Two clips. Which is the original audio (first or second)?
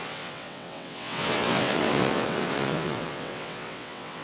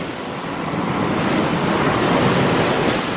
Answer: second